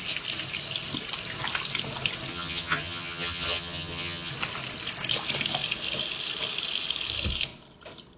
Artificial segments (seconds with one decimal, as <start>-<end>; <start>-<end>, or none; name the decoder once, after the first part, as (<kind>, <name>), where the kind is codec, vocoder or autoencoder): 2.3-4.3 (vocoder, HiFi-GAN)